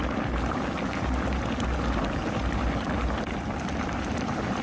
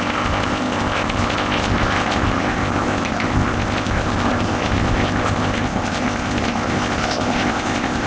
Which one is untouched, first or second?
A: first